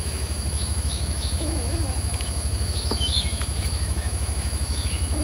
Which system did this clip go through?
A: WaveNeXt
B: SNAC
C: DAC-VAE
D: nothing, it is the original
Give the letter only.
C